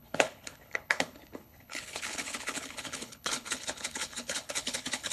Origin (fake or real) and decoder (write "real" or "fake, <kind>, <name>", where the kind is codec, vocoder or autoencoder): fake, codec, HILCodec